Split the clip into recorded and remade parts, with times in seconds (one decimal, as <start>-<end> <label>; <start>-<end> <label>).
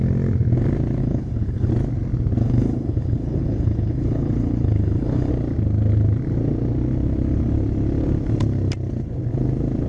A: 0.0-1.0 recorded; 1.0-1.7 remade; 1.7-2.4 recorded; 2.4-5.3 remade; 5.3-9.9 recorded